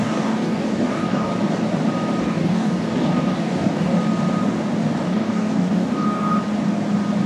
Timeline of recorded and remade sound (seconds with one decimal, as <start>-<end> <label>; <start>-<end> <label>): 0.0-1.3 remade; 1.3-2.2 recorded; 2.2-3.9 remade; 3.9-4.9 recorded; 4.9-6.4 remade; 6.4-7.3 recorded